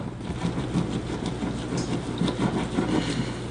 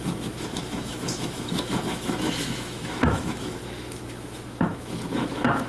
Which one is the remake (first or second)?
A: second